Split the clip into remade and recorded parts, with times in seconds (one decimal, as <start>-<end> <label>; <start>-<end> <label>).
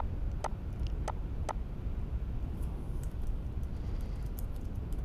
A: 0.0-5.0 recorded